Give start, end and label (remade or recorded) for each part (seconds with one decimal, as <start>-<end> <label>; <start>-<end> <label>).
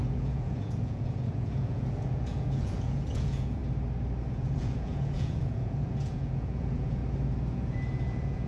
0.0-3.6 remade; 3.6-4.3 recorded; 4.3-7.0 remade; 7.0-7.5 recorded; 7.5-8.5 remade